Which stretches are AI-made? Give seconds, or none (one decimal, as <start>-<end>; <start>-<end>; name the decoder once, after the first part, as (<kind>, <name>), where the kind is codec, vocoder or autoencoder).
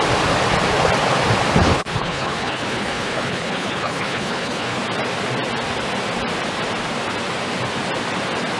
1.6-4.8 (codec, HILCodec)